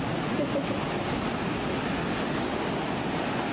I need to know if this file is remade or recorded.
recorded